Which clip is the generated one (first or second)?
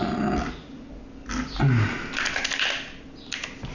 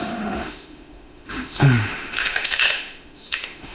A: second